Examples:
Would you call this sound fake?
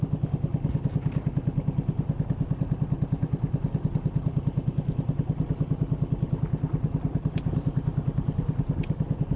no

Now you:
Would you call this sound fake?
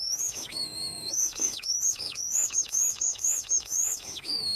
yes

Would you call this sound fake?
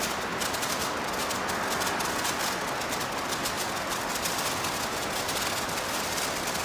no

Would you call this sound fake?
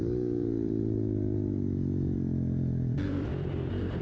yes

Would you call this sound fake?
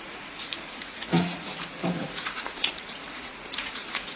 yes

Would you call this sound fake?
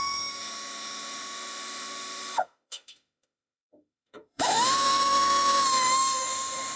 yes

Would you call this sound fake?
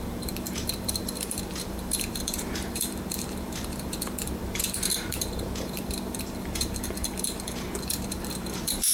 yes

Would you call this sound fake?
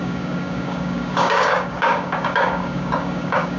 yes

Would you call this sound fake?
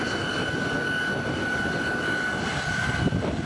no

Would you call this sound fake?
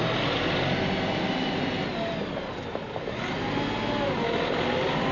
no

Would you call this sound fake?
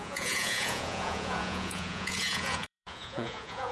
yes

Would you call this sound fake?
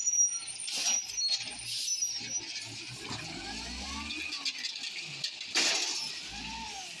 no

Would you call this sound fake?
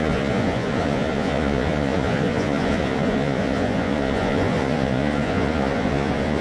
yes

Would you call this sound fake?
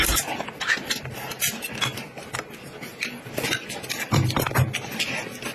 no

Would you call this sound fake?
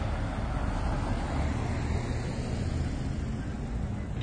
no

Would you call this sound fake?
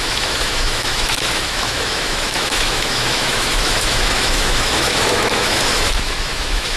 yes